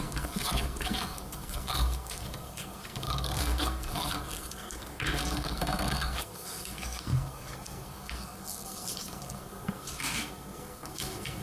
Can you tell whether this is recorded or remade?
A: remade